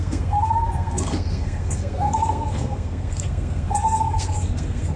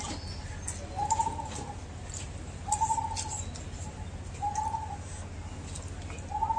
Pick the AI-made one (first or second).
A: first